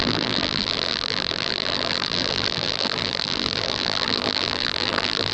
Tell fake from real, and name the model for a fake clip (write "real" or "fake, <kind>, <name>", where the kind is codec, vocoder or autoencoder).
fake, vocoder, BigVGAN v2